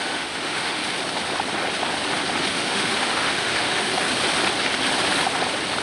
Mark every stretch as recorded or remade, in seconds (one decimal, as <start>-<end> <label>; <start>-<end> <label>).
0.0-0.8 remade; 0.8-2.5 recorded; 2.5-3.9 remade; 3.9-5.8 recorded